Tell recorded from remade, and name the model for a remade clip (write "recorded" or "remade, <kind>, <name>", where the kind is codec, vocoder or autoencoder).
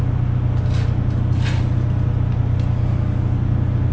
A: recorded